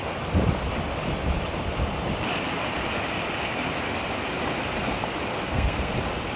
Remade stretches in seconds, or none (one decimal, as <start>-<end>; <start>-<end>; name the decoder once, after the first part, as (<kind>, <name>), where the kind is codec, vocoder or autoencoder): 5.3-5.9 (codec, SNAC)